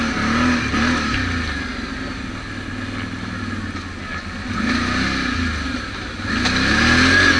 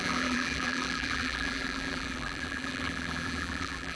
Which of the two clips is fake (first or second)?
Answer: second